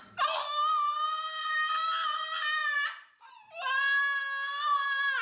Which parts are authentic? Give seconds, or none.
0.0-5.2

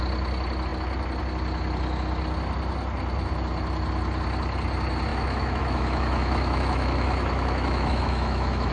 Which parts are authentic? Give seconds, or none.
0.0-5.1

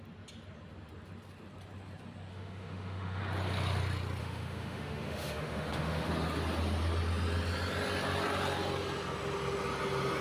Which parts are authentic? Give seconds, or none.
0.0-2.3; 3.2-4.2; 6.1-10.2

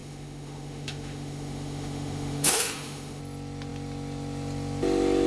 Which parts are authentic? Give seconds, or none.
3.2-5.3